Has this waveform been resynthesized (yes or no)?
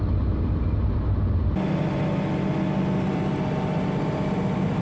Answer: no